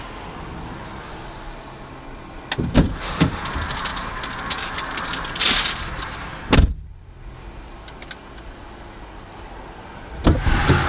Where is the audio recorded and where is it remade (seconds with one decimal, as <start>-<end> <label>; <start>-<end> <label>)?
0.0-2.9 recorded; 2.9-3.4 remade; 3.4-10.9 recorded